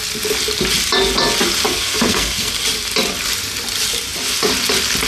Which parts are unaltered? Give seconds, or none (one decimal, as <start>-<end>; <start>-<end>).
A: 0.0-1.7; 2.5-5.1

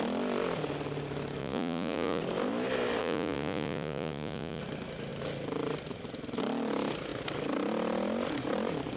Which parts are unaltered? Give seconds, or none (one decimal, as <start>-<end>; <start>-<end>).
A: 0.0-1.4; 2.2-3.0; 4.6-9.0